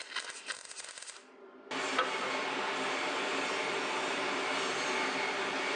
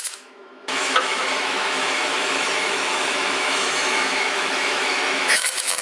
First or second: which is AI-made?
second